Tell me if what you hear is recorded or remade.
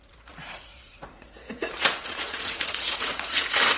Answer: remade